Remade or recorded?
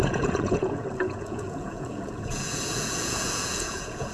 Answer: remade